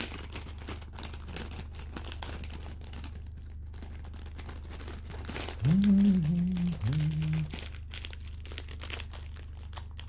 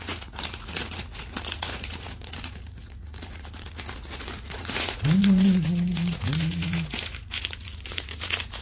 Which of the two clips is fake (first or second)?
second